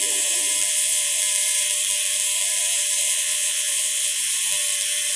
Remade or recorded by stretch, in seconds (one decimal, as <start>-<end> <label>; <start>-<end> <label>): 0.0-0.7 recorded; 0.7-1.2 remade; 1.2-3.0 recorded; 3.0-4.2 remade; 4.2-5.2 recorded